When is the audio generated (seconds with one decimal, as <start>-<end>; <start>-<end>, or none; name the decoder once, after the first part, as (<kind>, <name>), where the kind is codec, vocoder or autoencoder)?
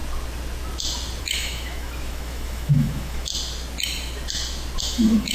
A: 1.2-3.3 (autoencoder, DAC-VAE); 4.8-5.3